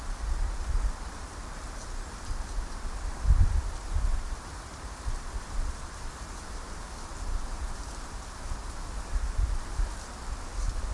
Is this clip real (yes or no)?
yes